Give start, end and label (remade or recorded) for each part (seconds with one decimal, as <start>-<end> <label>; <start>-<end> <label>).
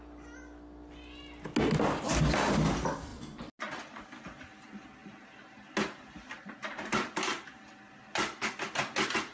0.0-9.3 recorded